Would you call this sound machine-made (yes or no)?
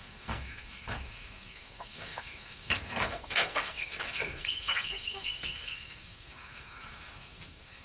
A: yes